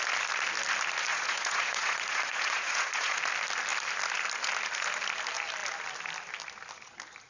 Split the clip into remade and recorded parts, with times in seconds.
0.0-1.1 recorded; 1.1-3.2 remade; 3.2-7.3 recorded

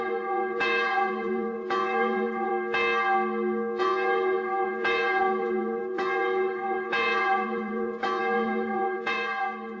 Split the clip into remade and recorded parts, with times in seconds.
0.0-2.5 remade; 2.5-3.8 recorded; 3.8-9.8 remade

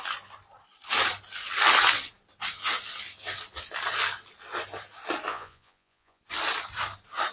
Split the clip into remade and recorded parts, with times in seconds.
0.0-5.3 recorded; 5.3-6.2 remade; 6.2-7.3 recorded

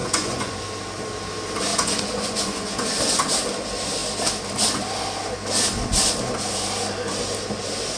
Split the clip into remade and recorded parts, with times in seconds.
0.0-0.6 remade; 0.6-1.7 recorded; 1.7-2.9 remade; 2.9-8.0 recorded

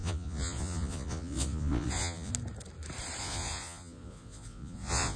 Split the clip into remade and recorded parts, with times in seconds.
0.0-2.3 remade; 2.3-3.2 recorded; 3.2-5.2 remade

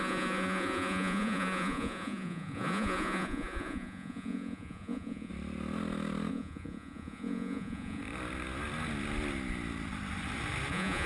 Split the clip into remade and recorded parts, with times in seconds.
0.0-5.3 remade; 5.3-6.3 recorded; 6.3-8.0 remade; 8.0-10.7 recorded; 10.7-11.1 remade